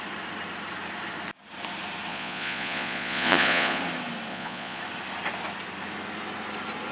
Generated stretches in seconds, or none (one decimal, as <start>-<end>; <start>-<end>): 2.1-3.8; 4.3-4.8